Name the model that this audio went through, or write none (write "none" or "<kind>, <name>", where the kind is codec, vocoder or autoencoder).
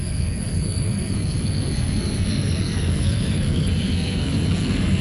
codec, SNAC